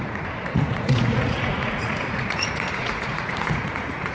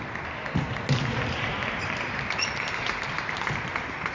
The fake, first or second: first